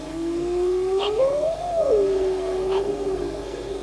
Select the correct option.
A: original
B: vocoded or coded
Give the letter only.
B